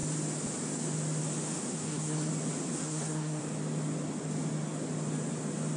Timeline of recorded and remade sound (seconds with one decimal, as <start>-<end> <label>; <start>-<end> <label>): 0.0-1.7 recorded; 1.7-2.3 remade; 2.3-2.8 recorded; 2.8-3.4 remade; 3.4-5.8 recorded